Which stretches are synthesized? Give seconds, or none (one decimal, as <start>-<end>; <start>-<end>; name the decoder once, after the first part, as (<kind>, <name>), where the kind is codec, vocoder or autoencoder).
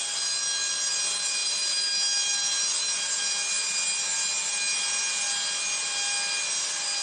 none